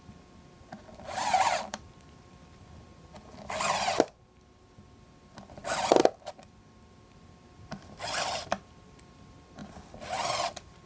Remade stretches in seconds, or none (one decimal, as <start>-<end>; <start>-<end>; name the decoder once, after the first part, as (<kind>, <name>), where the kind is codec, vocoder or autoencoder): 0.0-9.6 (vocoder, BigVGAN v2)